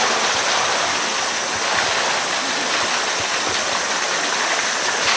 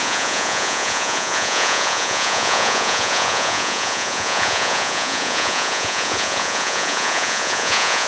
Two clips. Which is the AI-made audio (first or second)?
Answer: second